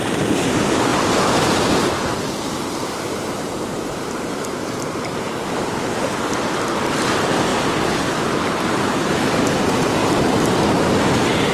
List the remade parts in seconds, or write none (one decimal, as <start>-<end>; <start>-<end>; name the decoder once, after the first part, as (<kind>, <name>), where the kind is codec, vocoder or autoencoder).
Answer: 0.9-5.8 (vocoder, BigVGAN v2); 10.0-10.7